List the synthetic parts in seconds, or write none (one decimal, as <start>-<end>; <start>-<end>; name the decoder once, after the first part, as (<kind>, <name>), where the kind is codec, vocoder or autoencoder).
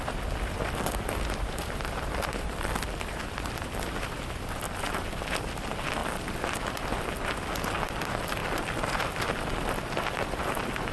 none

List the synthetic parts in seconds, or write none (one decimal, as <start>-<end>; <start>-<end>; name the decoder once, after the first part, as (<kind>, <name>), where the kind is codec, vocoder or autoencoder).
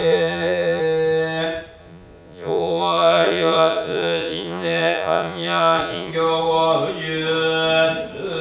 0.0-0.8 (vocoder, Vocos); 1.8-6.1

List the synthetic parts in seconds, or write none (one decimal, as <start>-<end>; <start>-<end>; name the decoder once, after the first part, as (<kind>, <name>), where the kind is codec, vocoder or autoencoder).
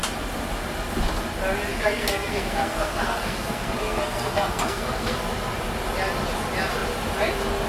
1.7-5.2 (codec, SNAC)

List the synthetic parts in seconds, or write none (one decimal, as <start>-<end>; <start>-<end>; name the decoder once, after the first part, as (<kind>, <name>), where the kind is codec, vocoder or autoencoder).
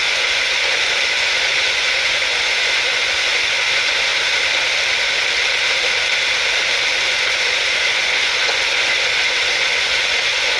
0.0-4.1 (vocoder, Vocos); 7.0-10.6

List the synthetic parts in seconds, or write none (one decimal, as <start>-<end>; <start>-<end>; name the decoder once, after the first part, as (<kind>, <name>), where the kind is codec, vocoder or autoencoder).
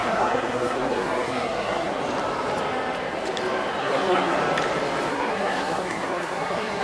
0.0-2.0 (codec, SNAC); 3.8-4.4; 5.1-6.8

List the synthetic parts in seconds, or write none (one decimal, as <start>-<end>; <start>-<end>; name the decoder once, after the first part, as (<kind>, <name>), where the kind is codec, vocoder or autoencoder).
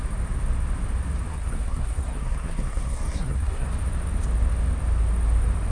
1.3-3.7 (codec, SNAC)